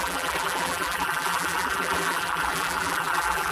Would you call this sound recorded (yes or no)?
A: no